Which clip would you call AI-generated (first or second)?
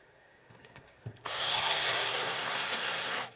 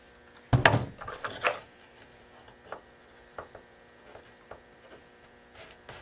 first